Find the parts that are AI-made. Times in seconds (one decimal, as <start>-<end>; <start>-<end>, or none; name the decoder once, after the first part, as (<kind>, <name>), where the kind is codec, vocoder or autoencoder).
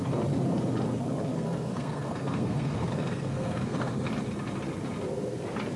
1.3-4.1 (codec, SNAC)